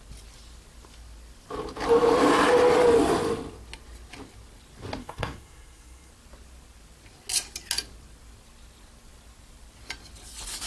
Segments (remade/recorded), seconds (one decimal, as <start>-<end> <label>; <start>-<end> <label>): 0.0-5.0 recorded; 5.0-6.1 remade; 6.1-10.7 recorded